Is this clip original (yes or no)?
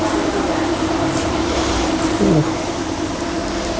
yes